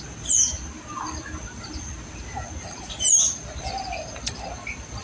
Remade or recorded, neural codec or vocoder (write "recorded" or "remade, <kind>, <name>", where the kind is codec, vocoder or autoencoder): recorded